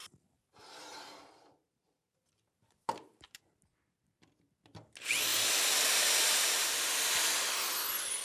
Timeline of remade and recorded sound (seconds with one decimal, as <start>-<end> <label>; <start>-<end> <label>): 0.0-3.4 remade; 3.4-5.3 recorded; 5.3-6.7 remade; 6.7-8.2 recorded